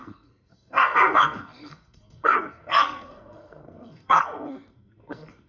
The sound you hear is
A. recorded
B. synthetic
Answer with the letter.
B